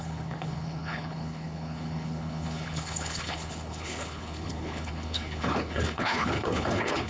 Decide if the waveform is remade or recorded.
remade